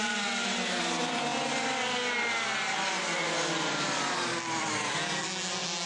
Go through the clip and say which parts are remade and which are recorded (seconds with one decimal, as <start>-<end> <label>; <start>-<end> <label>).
0.0-5.9 recorded